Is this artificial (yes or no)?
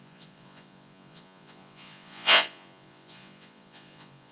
yes